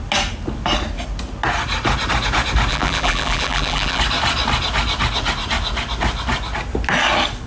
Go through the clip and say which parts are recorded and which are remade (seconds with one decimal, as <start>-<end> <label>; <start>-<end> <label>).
0.0-2.7 recorded; 2.7-4.0 remade; 4.0-7.5 recorded